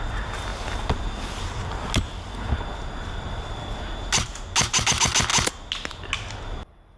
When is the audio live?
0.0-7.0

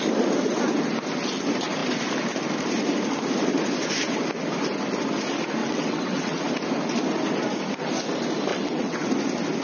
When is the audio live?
0.0-5.6; 6.4-8.5; 9.1-9.6

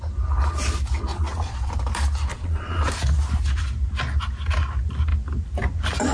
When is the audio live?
0.0-1.1; 1.7-2.3; 2.9-6.1

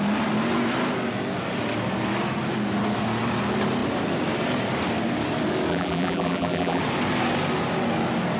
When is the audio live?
0.0-5.7; 6.8-8.4